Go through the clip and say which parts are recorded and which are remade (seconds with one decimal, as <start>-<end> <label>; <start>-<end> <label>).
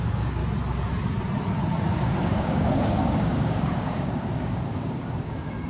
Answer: 0.0-0.4 remade; 0.4-1.9 recorded; 1.9-5.7 remade